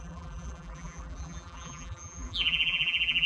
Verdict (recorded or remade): remade